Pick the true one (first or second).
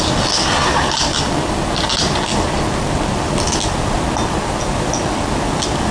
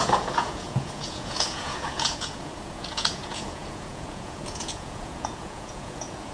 first